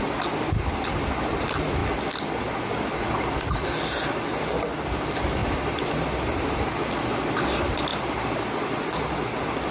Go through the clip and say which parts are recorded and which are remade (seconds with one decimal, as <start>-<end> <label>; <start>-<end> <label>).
0.0-5.4 recorded; 5.4-6.8 remade; 6.8-9.7 recorded